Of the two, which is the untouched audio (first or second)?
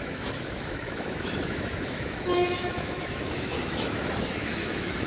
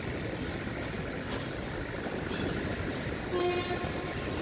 second